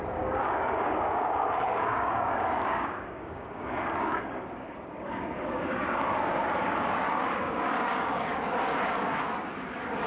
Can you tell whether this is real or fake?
fake